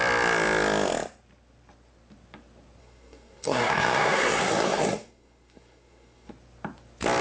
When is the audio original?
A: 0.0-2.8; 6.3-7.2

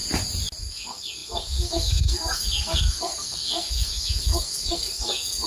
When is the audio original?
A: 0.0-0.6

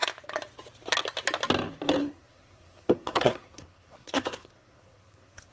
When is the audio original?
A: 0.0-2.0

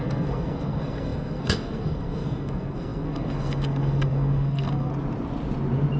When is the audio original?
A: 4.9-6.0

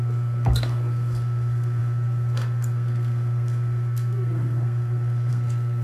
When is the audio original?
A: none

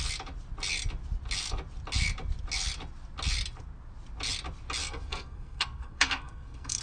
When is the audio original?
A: 0.0-4.8

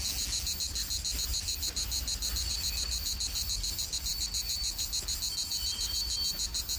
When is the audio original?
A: 0.0-6.8

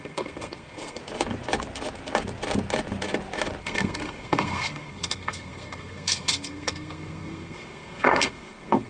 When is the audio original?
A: 1.0-3.6